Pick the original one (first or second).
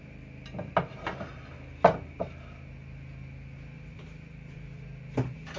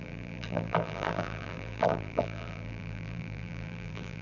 first